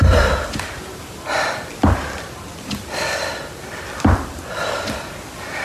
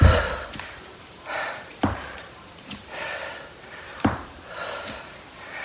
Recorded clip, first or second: first